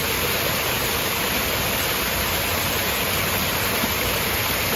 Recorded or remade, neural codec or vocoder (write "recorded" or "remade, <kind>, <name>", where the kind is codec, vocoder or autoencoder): recorded